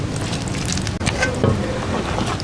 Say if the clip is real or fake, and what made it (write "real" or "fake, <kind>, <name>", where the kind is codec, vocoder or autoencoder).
real